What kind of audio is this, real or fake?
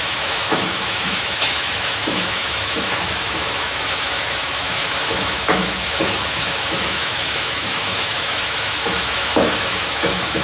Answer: fake